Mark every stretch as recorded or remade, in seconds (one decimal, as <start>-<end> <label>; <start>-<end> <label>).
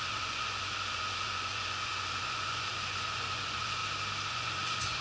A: 0.0-3.8 remade; 3.8-4.3 recorded; 4.3-5.0 remade